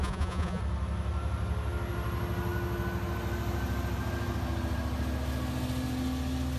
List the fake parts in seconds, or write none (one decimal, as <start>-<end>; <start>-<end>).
0.0-0.6